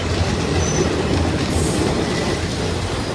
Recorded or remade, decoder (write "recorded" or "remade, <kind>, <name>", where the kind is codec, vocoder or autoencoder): recorded